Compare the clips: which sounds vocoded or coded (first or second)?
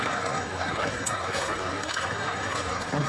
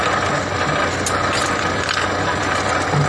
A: first